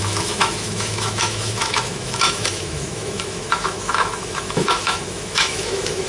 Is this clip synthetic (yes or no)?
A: yes